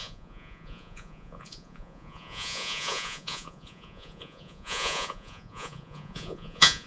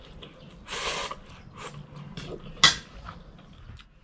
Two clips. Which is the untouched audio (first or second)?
second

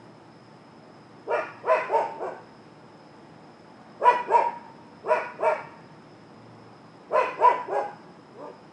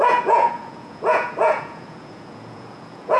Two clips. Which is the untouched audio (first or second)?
first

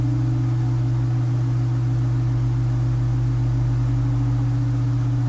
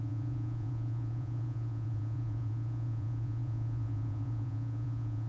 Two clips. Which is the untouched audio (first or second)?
first